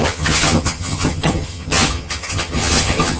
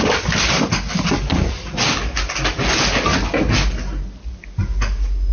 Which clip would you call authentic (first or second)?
second